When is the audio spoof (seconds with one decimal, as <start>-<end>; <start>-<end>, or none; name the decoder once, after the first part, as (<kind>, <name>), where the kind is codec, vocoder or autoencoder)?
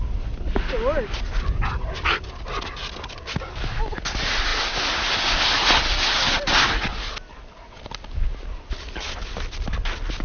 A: none